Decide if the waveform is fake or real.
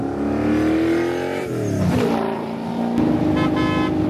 real